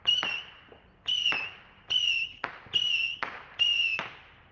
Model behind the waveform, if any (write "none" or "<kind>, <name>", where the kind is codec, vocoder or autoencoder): none